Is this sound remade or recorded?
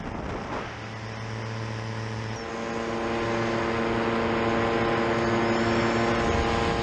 recorded